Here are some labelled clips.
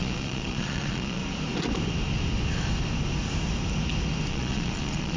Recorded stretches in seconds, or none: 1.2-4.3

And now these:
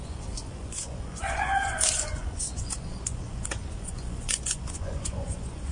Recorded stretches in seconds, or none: none

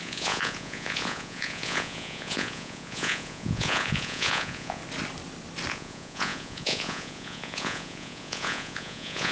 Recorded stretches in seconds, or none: 4.8-5.7

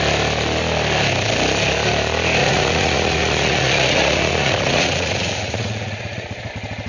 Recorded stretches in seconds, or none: 0.0-2.4; 6.5-6.9

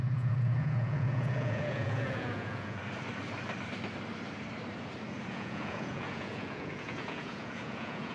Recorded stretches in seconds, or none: 2.8-5.3

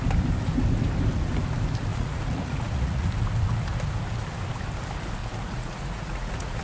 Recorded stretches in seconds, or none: 0.0-1.9; 3.1-5.2

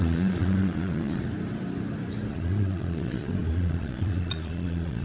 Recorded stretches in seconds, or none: 1.3-2.3

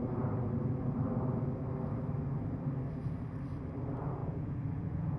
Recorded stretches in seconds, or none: 0.0-4.2